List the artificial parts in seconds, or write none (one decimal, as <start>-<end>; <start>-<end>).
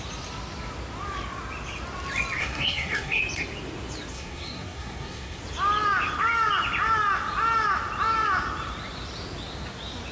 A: 2.4-3.2; 4.1-5.4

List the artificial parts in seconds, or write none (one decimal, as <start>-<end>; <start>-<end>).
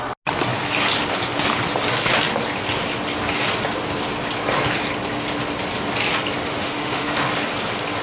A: 6.5-7.3